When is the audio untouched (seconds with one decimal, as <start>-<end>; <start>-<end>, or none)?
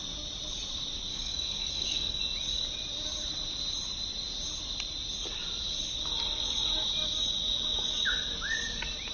0.0-1.1; 2.2-9.1